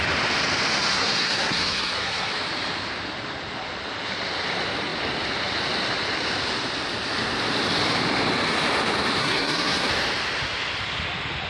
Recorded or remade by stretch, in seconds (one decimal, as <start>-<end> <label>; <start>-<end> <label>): 0.0-0.9 recorded; 0.9-2.3 remade; 2.3-9.2 recorded; 9.2-9.9 remade; 9.9-11.5 recorded